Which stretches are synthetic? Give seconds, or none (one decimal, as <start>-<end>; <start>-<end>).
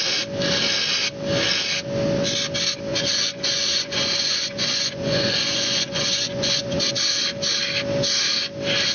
2.9-6.9